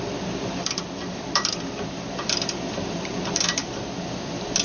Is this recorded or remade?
remade